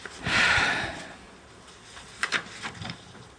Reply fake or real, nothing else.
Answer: real